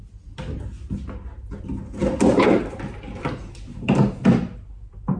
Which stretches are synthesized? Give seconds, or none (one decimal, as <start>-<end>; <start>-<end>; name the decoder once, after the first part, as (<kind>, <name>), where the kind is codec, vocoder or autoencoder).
none